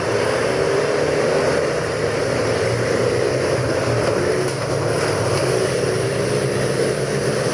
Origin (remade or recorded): recorded